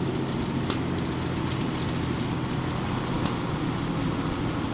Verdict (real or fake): real